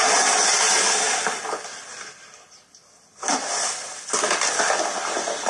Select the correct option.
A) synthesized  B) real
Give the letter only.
B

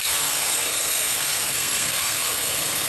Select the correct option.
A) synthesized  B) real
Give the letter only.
A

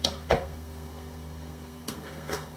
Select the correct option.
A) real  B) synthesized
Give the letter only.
B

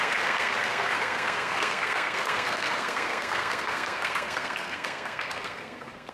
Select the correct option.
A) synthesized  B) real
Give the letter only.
A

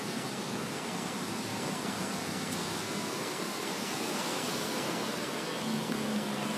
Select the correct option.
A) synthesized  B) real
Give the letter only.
A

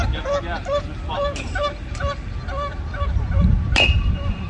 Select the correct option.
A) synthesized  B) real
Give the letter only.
B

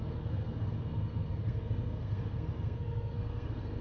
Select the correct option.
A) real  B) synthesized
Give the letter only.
B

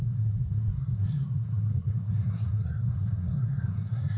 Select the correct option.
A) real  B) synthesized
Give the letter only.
B